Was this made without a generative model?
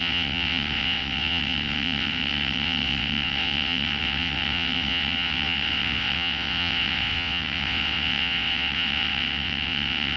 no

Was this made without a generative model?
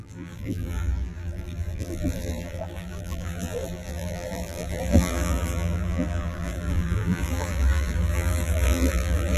no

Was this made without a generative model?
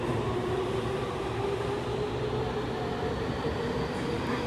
no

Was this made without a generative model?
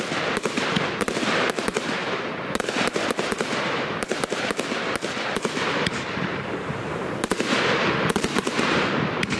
no